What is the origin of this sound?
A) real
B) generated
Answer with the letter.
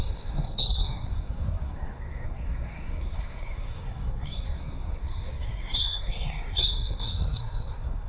B